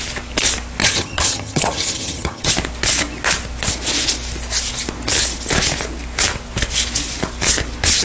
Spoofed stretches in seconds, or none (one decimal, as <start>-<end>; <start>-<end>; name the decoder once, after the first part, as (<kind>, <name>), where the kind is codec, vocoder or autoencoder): 0.8-2.5 (vocoder, HiFi-GAN)

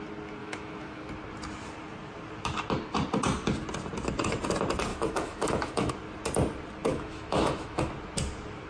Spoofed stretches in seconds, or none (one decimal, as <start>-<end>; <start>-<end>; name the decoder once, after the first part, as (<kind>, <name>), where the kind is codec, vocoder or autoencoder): 0.4-1.1 (autoencoder, DAC-VAE); 4.9-5.9; 6.9-7.9

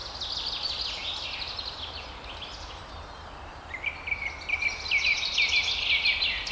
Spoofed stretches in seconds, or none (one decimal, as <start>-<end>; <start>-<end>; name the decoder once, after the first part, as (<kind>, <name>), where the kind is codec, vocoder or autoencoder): none

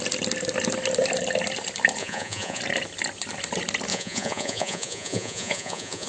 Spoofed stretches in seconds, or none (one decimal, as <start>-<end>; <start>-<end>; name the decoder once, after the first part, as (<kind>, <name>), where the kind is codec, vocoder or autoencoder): 2.0-2.6 (vocoder, Vocos); 3.9-6.1

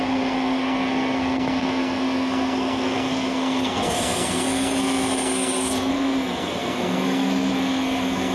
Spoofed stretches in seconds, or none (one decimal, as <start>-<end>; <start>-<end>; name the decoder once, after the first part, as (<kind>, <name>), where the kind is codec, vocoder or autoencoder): 0.0-8.3 (codec, SNAC)

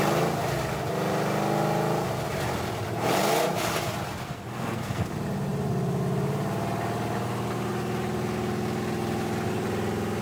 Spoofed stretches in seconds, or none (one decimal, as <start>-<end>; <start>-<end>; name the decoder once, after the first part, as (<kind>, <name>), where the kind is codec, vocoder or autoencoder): 4.2-5.1 (codec, SNAC)

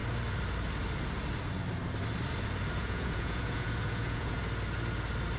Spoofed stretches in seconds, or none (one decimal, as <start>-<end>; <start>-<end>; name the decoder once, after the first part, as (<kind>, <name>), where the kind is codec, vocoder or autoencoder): 2.8-4.4 (vocoder, Vocos)